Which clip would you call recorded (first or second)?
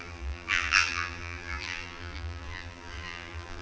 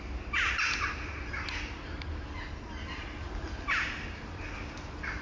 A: second